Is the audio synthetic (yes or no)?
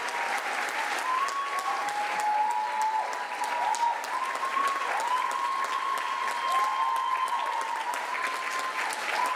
no